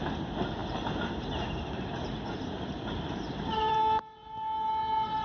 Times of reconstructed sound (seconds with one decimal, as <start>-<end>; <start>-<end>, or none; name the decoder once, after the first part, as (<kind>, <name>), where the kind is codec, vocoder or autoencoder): 0.6-3.7 (vocoder, BigVGAN v2)